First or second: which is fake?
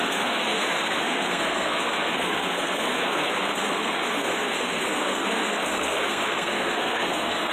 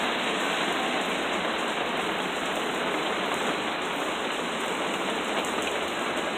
first